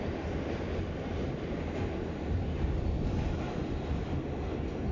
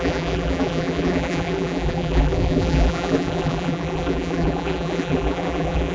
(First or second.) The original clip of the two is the first